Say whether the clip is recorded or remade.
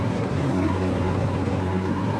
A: remade